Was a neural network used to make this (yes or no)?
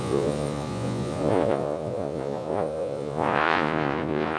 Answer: yes